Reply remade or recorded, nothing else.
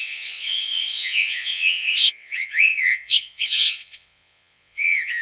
remade